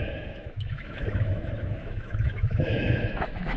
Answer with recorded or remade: remade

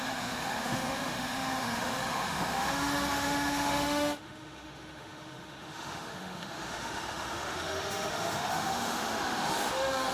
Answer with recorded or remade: remade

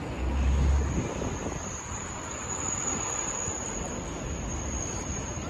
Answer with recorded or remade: recorded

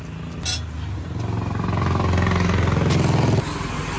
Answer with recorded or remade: recorded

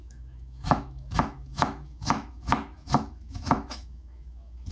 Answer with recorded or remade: remade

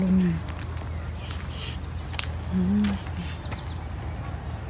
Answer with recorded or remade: recorded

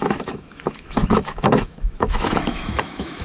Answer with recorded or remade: remade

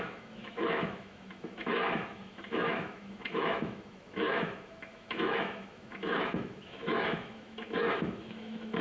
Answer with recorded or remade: remade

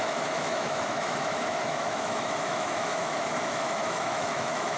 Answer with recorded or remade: remade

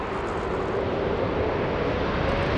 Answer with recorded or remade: recorded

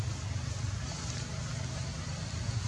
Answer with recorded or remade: recorded